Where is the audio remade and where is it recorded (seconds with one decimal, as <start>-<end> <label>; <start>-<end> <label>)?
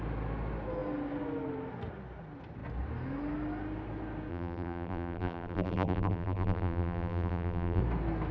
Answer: 0.0-4.3 recorded; 4.3-7.8 remade; 7.8-8.3 recorded